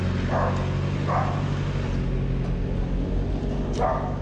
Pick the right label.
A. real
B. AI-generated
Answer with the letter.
A